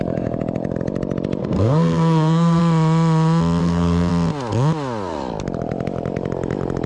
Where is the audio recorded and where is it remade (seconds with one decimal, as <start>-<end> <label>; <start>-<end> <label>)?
0.0-1.4 recorded; 1.4-2.6 remade; 2.6-3.6 recorded; 3.6-4.1 remade; 4.1-6.9 recorded